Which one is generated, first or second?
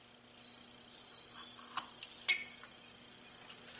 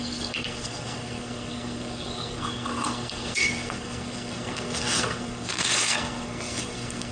second